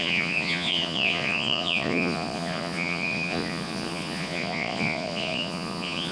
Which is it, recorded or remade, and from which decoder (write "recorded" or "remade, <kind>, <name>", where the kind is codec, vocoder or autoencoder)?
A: remade, vocoder, Vocos